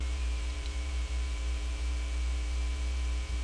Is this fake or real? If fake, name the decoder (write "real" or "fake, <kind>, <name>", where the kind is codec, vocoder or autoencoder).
fake, vocoder, BigVGAN v2